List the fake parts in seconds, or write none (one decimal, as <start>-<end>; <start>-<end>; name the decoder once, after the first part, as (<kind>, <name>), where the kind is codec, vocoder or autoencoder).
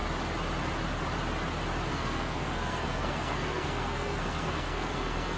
1.9-5.4 (codec, SNAC)